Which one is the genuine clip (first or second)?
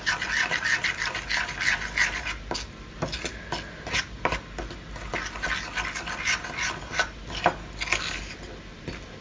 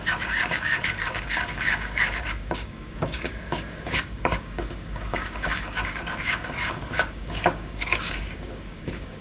first